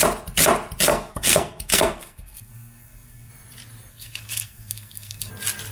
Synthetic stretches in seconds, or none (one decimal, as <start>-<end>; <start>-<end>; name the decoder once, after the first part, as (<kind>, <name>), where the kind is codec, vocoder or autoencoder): 0.9-3.3 (codec, SNAC); 3.9-5.3